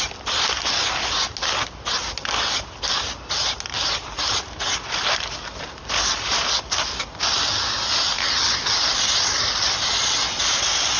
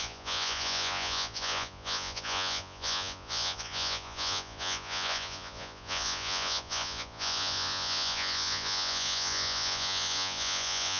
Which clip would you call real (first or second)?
first